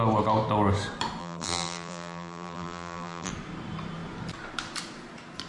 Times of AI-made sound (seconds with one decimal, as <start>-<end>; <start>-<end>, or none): 1.2-3.3